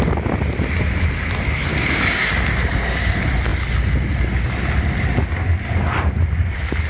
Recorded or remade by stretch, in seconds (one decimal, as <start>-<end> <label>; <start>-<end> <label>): 0.0-1.7 recorded; 1.7-3.1 remade; 3.1-6.9 recorded